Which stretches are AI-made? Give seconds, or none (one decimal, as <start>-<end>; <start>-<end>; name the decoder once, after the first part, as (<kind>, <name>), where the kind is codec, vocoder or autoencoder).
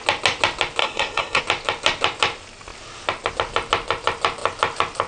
0.8-1.4 (codec, SNAC)